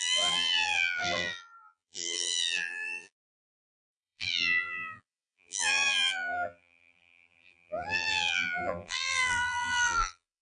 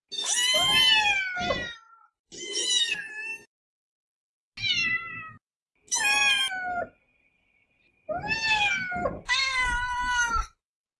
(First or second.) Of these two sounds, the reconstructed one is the first